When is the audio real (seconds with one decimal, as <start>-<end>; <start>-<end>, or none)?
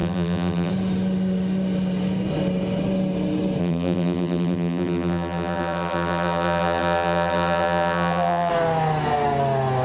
0.7-3.6; 8.5-9.8